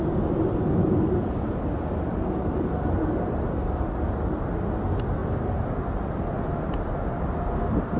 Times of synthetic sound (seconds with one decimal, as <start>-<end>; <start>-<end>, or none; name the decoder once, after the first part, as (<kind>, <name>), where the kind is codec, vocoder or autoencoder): none